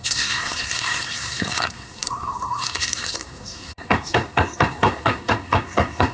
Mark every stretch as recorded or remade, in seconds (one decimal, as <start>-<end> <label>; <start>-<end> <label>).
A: 0.0-6.1 remade